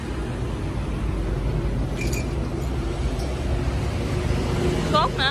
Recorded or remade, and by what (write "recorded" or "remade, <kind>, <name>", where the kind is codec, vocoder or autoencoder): recorded